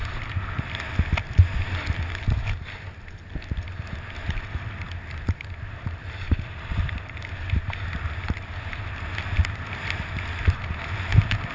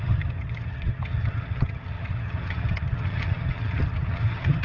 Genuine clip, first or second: first